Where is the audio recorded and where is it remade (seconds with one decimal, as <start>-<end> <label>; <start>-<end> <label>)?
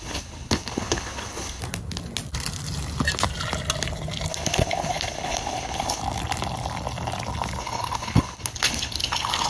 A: 0.0-1.6 remade; 1.6-4.3 recorded; 4.3-6.0 remade; 6.0-7.6 recorded; 7.6-9.5 remade